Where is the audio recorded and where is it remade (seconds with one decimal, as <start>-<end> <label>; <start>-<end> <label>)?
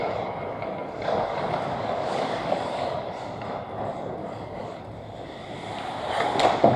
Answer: 0.0-3.1 remade; 3.1-4.2 recorded; 4.2-4.8 remade; 4.8-6.8 recorded